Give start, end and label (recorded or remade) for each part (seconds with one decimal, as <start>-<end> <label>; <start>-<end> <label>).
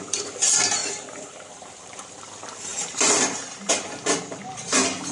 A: 0.0-0.8 recorded; 0.8-1.9 remade; 1.9-2.7 recorded; 2.7-3.7 remade; 3.7-5.1 recorded